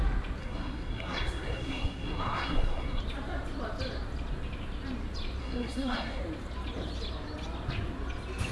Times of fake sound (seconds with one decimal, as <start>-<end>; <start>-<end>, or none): 0.4-3.0; 5.4-6.2